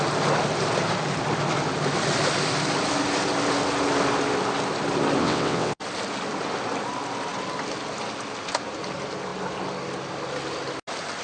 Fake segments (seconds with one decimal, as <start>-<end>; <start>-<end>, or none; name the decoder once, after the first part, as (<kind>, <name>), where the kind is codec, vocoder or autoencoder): 5.2-5.8 (vocoder, WaveNeXt)